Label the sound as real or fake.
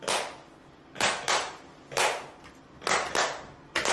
real